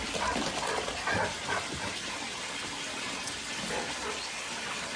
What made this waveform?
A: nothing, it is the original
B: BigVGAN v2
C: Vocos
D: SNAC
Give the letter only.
A